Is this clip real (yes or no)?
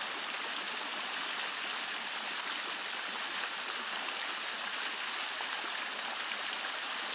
yes